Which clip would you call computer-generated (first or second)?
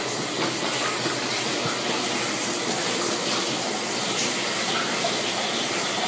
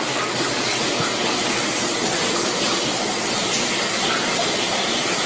second